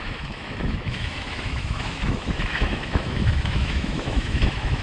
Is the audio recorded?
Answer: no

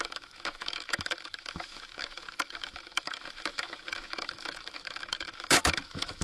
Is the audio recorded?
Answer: no